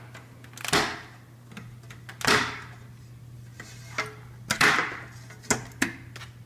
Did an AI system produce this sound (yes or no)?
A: no